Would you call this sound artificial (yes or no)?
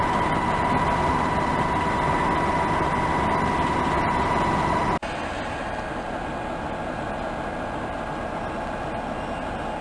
no